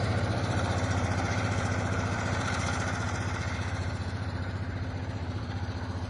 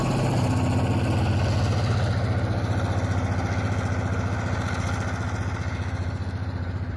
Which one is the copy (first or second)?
first